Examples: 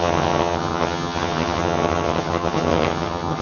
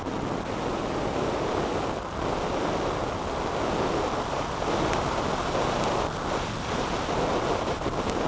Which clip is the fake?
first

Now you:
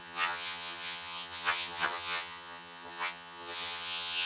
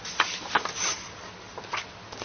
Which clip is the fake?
first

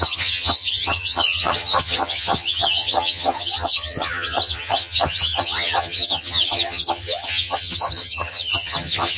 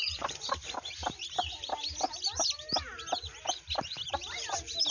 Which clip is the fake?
first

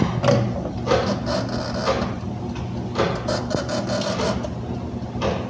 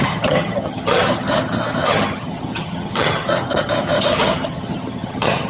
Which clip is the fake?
second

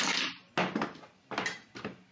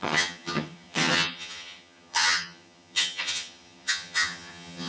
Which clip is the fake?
second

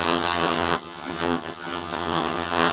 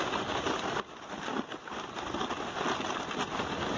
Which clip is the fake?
first